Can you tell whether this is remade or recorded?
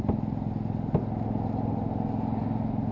recorded